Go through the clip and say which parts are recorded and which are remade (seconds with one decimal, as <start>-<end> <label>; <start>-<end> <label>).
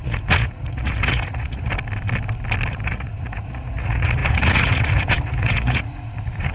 0.0-1.7 remade; 1.7-2.7 recorded; 2.7-6.5 remade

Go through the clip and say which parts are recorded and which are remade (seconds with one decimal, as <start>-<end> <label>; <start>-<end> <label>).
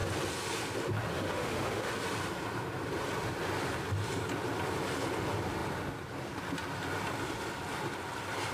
0.0-1.1 recorded; 1.1-1.9 remade; 1.9-8.5 recorded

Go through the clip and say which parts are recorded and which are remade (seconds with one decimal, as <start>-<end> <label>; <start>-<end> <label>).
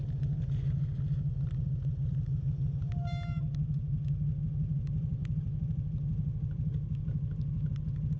0.0-8.2 recorded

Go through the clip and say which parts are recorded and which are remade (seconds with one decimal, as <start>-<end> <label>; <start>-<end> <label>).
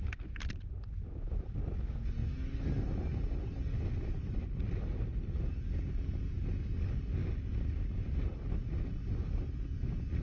0.0-10.2 recorded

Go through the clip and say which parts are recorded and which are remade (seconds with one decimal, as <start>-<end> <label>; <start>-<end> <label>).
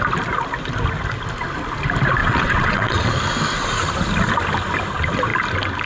0.0-2.2 recorded; 2.2-3.1 remade; 3.1-5.9 recorded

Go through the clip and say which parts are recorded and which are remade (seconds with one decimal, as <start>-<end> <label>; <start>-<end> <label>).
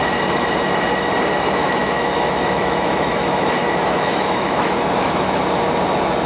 0.0-1.6 recorded; 1.6-5.4 remade; 5.4-6.3 recorded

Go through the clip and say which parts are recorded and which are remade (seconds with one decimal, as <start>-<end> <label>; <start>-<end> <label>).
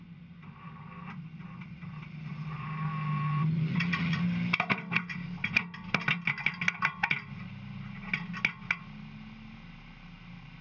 0.0-3.4 recorded; 3.4-4.2 remade; 4.2-10.6 recorded